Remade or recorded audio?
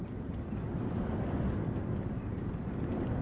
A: remade